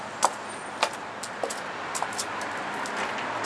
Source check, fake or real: real